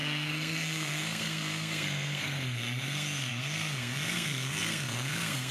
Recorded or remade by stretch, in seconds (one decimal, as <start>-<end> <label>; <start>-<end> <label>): 0.0-5.5 remade